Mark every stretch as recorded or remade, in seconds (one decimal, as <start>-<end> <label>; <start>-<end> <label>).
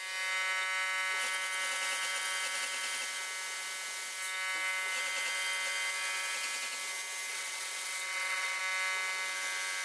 0.0-7.3 recorded; 7.3-8.6 remade; 8.6-9.8 recorded